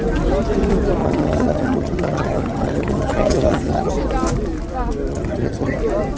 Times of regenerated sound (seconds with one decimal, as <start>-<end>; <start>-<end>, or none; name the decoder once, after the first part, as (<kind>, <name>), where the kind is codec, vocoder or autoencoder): 1.0-3.9 (vocoder, HiFi-GAN); 5.1-5.8